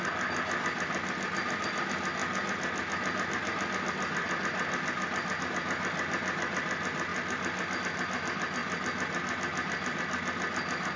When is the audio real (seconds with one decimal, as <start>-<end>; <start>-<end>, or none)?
0.0-11.0